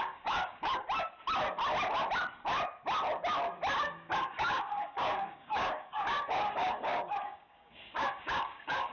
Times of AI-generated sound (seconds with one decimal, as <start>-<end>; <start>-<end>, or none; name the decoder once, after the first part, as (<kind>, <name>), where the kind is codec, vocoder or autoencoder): 0.0-0.7 (codec, DAC); 3.8-8.9